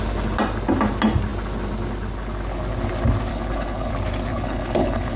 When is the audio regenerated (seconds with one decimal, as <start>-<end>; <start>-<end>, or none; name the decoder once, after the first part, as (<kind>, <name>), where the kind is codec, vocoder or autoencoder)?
3.3-3.9 (codec, HILCodec); 4.3-5.2